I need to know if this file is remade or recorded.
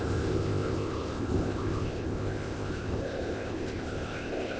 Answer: remade